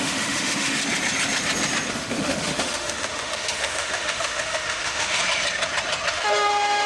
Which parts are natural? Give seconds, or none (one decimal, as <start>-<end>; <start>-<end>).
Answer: 0.8-1.9; 5.2-6.1

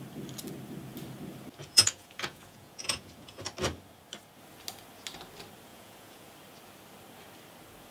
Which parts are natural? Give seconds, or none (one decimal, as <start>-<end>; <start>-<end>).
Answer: 0.0-1.6; 3.4-5.7; 6.3-7.9

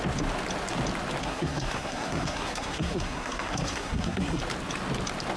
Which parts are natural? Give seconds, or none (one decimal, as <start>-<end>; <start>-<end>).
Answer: 0.0-1.2; 4.4-5.4